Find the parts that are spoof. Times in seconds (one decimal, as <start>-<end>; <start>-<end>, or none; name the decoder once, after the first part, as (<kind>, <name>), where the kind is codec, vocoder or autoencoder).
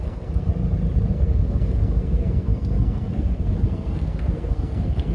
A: 0.0-0.5 (codec, SNAC); 1.1-5.1